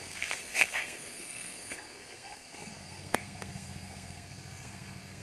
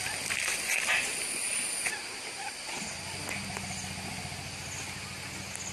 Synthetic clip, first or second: first